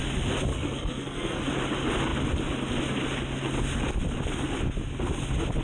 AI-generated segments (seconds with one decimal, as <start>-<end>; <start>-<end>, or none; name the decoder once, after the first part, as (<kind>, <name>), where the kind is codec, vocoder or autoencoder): 0.5-1.4 (codec, SNAC)